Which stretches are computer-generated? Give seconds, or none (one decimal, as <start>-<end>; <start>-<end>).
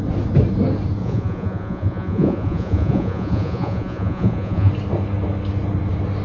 1.0-4.7